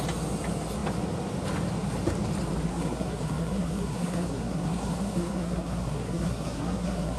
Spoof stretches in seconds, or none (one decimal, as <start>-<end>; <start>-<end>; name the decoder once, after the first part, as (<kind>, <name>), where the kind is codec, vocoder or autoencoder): 2.7-7.2 (codec, SNAC)